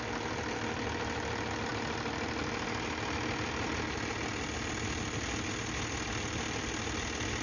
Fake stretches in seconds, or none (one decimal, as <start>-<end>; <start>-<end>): none